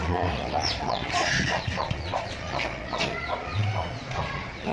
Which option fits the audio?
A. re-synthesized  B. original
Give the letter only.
A